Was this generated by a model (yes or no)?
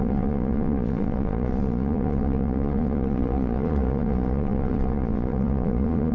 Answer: yes